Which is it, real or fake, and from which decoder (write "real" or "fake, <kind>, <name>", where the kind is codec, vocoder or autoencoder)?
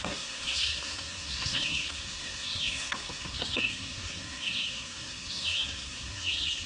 fake, codec, SNAC